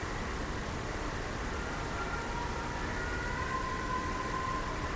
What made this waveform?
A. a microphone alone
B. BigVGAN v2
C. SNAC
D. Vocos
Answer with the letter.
A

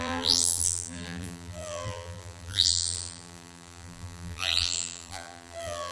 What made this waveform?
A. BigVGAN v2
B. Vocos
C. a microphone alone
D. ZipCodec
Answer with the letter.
A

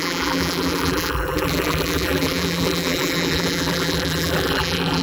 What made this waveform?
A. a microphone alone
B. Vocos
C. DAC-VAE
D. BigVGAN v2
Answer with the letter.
D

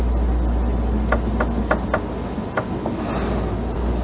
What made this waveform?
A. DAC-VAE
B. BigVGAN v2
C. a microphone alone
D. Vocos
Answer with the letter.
C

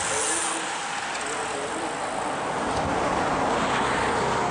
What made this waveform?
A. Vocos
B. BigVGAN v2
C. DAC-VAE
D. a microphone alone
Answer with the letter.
D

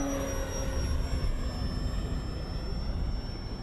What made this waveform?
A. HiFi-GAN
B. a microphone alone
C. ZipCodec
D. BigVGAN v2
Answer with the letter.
B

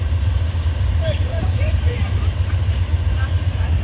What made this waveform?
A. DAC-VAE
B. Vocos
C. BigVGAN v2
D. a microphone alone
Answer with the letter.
C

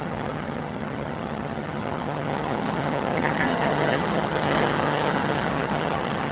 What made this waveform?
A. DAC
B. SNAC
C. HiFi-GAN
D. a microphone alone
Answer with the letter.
C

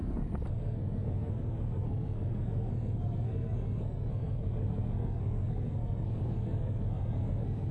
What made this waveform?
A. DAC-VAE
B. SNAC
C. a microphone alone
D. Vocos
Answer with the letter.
B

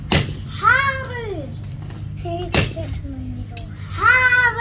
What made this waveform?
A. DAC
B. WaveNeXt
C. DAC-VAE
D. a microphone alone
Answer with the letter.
D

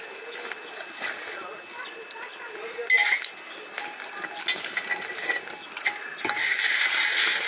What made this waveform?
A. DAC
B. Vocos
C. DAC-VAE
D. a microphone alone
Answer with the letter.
D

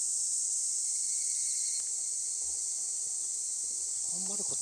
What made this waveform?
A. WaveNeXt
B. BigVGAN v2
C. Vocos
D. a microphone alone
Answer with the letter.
D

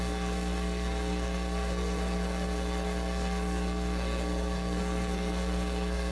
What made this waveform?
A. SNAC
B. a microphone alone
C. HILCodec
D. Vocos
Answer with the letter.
A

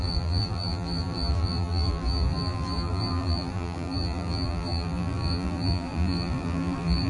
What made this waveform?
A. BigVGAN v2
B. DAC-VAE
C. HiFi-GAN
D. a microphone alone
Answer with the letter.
A